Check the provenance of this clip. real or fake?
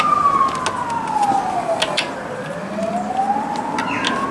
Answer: real